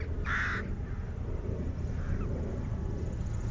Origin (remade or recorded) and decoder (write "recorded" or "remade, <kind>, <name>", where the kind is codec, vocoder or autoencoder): recorded